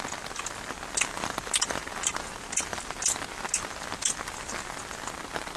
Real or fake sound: real